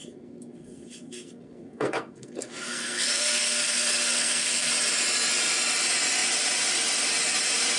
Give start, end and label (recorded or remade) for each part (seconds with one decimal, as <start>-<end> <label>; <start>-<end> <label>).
0.0-4.7 remade; 4.7-7.8 recorded